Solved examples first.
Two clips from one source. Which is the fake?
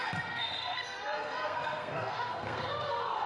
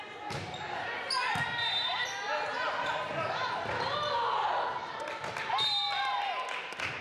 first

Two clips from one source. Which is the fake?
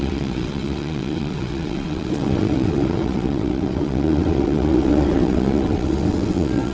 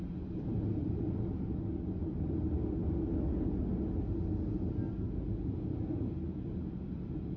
first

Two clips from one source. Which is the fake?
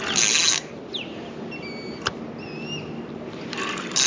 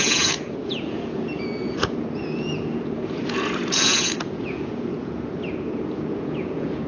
second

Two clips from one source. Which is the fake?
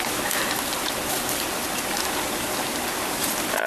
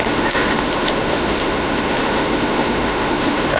second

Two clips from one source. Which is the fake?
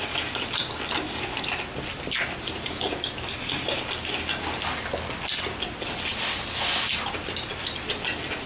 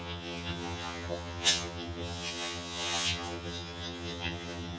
second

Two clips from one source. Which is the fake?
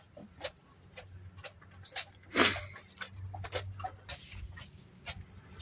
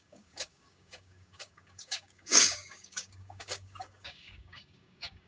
second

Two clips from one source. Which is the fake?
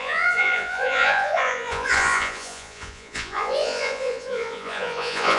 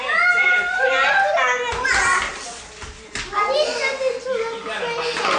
first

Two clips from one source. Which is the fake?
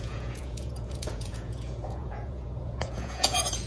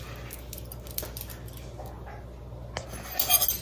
first